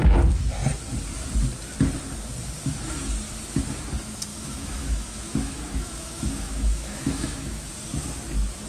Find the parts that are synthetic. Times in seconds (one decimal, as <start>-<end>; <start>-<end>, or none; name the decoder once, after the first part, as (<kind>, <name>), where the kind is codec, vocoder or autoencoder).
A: 4.3-7.7 (autoencoder, DAC-VAE)